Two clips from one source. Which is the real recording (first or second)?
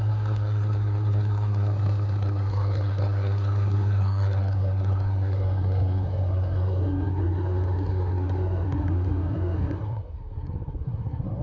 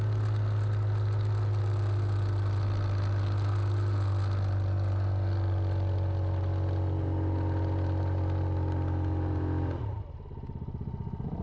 second